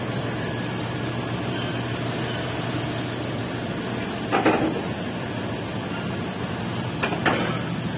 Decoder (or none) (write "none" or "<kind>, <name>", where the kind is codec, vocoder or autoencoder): none